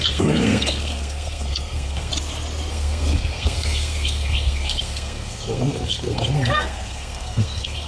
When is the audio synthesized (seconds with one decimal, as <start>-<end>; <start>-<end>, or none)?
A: 0.0-2.1; 2.7-7.9